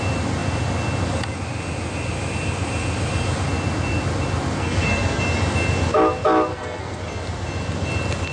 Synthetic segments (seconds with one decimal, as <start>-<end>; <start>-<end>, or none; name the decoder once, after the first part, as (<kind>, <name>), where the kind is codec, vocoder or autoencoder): 4.6-5.2 (codec, SNAC); 6.5-7.0